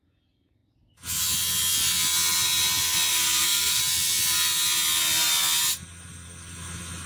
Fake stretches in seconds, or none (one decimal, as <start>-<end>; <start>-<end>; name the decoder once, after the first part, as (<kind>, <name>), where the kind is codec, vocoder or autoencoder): 3.1-3.8 (codec, SNAC)